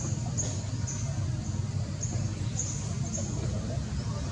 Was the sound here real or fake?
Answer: real